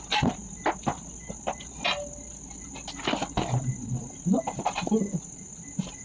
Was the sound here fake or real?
real